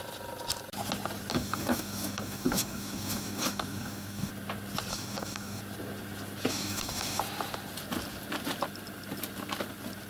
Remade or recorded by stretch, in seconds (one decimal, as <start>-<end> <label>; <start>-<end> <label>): 0.0-1.3 recorded; 1.3-4.3 remade; 4.3-4.9 recorded; 4.9-5.6 remade; 5.6-6.5 recorded; 6.5-7.2 remade; 7.2-10.1 recorded